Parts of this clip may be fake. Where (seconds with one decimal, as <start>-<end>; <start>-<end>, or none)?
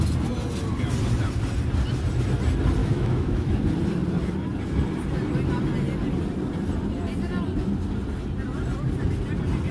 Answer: 2.8-3.6